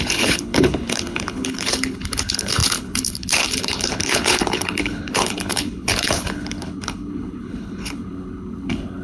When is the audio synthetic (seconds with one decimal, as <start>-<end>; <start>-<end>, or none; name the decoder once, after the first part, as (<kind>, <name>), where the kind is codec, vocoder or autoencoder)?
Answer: 0.0-9.0 (codec, HILCodec)